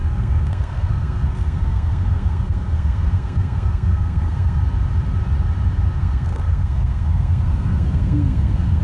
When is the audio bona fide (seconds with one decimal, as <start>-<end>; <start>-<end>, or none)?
4.6-6.0